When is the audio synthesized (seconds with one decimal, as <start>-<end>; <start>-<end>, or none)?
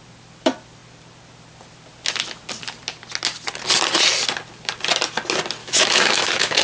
5.6-6.6